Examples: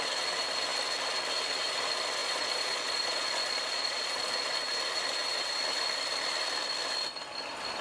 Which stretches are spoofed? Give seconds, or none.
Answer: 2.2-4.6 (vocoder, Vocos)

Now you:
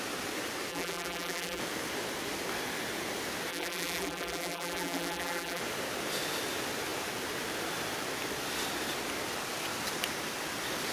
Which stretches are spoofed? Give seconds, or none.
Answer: 0.7-1.6 (vocoder, BigVGAN v2); 3.5-5.6